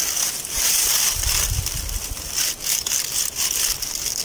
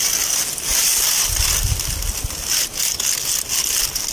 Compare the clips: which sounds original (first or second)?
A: second